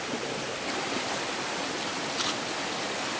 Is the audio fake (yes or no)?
no